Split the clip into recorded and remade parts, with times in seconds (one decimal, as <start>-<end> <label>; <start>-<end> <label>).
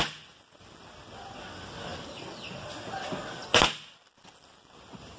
0.0-5.2 recorded